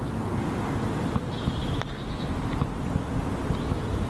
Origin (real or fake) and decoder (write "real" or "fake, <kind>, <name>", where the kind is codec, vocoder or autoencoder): real